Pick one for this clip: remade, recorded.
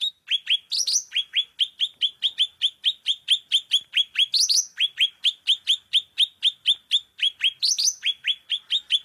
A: recorded